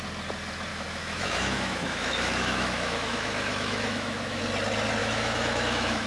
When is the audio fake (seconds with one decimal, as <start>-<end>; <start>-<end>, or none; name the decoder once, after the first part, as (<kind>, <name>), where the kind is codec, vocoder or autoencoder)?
0.7-4.4 (autoencoder, DAC-VAE); 5.0-6.1

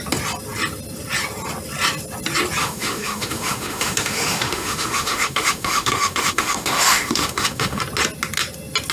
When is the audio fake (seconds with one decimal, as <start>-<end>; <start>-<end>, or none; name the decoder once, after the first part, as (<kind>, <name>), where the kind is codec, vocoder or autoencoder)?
2.6-7.8 (autoencoder, DAC-VAE)

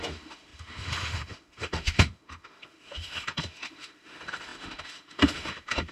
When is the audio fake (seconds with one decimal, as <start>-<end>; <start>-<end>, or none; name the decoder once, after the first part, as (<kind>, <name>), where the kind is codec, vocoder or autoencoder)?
0.0-5.9 (autoencoder, DAC-VAE)

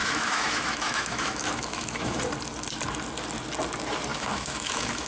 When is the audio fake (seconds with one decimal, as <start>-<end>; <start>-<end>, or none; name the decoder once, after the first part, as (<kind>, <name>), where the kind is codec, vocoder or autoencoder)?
0.0-2.2 (autoencoder, DAC-VAE); 4.1-5.1